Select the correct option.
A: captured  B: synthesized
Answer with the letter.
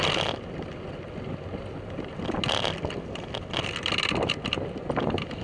A